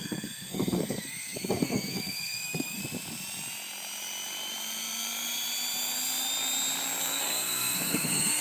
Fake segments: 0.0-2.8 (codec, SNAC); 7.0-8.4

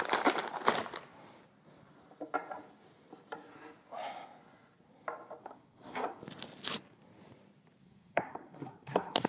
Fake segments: 5.4-6.2 (codec, SNAC); 7.8-9.3